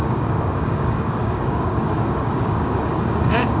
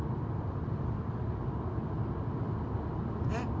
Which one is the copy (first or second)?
first